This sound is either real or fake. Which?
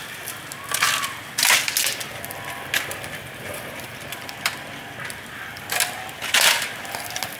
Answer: real